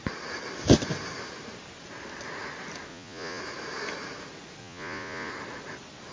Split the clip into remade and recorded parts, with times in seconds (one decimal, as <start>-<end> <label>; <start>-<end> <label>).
0.0-2.9 recorded; 2.9-3.4 remade; 3.4-4.6 recorded; 4.6-5.3 remade; 5.3-6.1 recorded